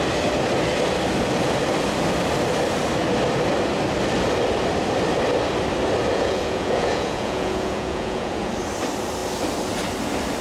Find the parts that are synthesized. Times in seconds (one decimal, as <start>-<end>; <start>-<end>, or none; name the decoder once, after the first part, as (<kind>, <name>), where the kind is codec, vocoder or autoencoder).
6.1-8.5 (vocoder, Vocos)